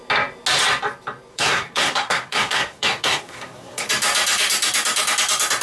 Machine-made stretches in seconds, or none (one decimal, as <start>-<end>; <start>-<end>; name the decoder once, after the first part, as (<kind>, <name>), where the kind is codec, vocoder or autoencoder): 1.3-3.9 (codec, SNAC)